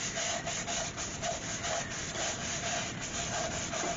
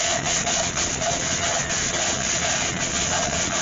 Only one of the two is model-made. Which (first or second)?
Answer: second